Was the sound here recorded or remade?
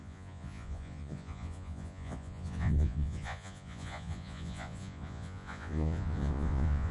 remade